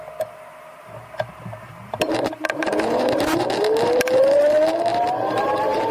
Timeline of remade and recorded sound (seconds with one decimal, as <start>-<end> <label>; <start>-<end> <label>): 0.0-0.7 recorded; 0.7-4.2 remade; 4.2-4.9 recorded; 4.9-5.9 remade